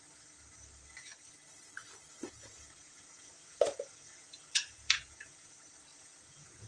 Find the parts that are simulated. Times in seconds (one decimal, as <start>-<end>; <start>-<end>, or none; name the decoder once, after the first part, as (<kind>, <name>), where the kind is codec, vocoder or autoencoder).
1.8-5.5 (vocoder, Vocos); 5.9-6.7